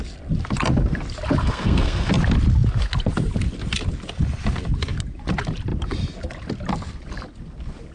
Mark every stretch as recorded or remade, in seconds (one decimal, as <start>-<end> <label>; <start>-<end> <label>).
0.0-1.4 recorded; 1.4-2.1 remade; 2.1-7.9 recorded